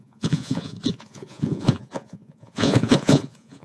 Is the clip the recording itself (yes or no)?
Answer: no